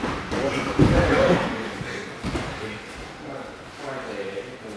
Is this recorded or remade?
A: recorded